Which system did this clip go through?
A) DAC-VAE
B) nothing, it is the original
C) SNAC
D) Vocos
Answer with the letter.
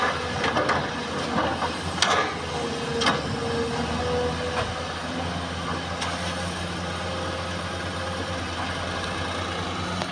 B